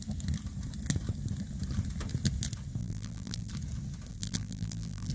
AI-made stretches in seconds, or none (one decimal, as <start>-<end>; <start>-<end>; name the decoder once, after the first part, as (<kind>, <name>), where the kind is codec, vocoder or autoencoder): 2.8-3.5 (vocoder, BigVGAN v2); 4.1-5.1